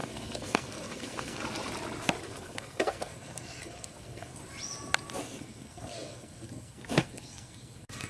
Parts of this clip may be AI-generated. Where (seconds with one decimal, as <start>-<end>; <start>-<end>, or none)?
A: 0.0-1.4; 2.2-4.4; 5.2-8.1